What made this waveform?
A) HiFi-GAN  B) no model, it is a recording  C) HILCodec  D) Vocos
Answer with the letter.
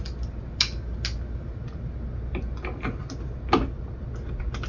B